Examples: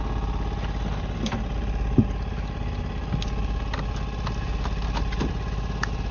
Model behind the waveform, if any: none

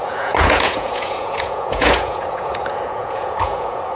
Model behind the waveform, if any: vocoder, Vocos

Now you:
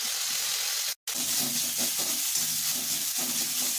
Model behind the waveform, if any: none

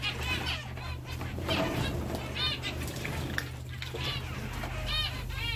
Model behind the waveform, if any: vocoder, BigVGAN v2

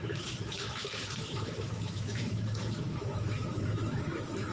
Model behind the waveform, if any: autoencoder, DAC-VAE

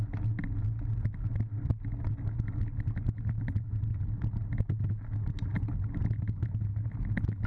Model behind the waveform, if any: none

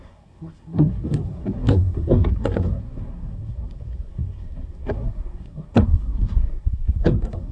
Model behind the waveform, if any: codec, SNAC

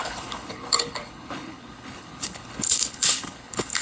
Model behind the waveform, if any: codec, HILCodec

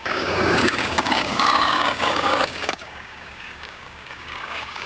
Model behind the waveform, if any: codec, DAC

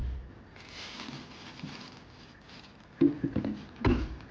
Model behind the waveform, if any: none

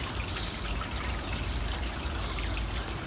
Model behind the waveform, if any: none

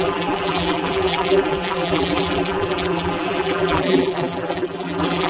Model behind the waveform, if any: vocoder, BigVGAN v2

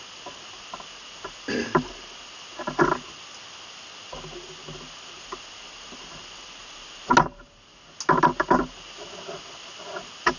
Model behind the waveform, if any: none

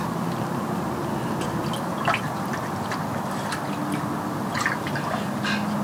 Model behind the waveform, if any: none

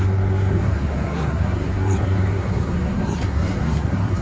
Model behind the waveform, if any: codec, SNAC